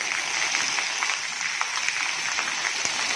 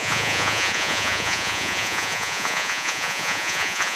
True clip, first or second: first